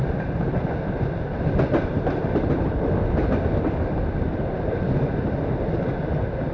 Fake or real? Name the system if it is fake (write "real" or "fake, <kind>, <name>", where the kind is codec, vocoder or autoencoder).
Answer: real